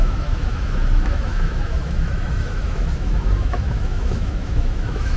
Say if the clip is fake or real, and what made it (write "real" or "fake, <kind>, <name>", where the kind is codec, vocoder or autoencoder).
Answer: fake, autoencoder, DAC-VAE